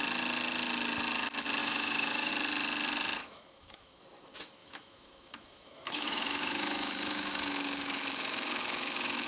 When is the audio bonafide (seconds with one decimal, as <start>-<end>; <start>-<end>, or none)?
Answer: 0.0-1.6; 2.3-3.2; 4.0-4.6